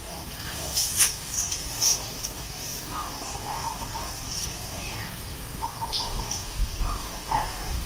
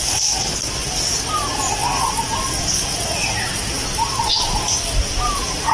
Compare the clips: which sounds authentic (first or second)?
second